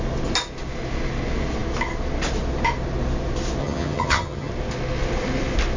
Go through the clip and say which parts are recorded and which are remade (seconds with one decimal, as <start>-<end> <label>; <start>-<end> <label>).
0.0-3.6 recorded; 3.6-4.5 remade; 4.5-5.8 recorded

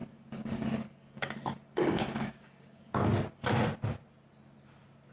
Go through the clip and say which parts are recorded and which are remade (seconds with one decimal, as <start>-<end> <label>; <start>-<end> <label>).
0.0-3.1 remade; 3.1-5.1 recorded

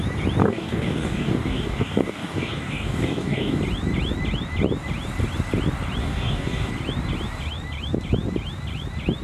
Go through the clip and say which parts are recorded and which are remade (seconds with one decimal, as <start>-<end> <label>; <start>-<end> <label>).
0.0-0.4 recorded; 0.4-3.6 remade; 3.6-6.0 recorded; 6.0-6.7 remade; 6.7-9.2 recorded

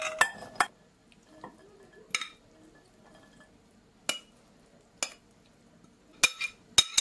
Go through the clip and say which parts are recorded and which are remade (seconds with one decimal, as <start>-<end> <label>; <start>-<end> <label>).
0.0-7.0 recorded